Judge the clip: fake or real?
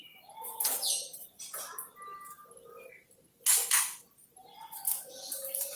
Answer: real